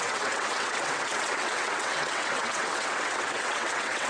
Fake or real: fake